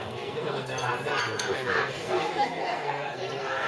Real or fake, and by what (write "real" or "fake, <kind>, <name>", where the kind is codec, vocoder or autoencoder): fake, codec, SNAC